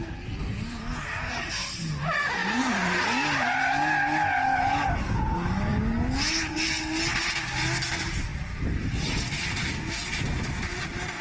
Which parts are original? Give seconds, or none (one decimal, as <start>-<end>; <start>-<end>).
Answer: 0.0-11.2